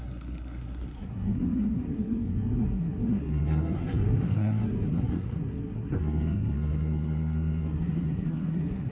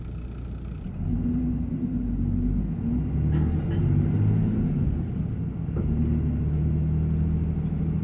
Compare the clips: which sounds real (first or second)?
second